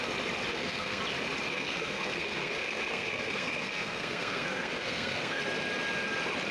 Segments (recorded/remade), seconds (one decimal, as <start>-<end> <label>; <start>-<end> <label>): 0.0-0.5 recorded; 0.5-1.0 remade; 1.0-1.5 recorded; 1.5-5.4 remade; 5.4-6.5 recorded